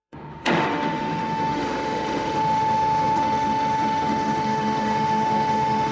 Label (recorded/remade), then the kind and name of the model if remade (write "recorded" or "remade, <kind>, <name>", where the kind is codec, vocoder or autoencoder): remade, autoencoder, DAC-VAE